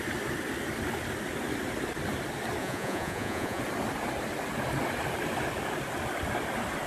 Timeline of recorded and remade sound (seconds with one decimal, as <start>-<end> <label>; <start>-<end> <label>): 0.0-2.6 recorded; 2.6-3.6 remade; 3.6-6.9 recorded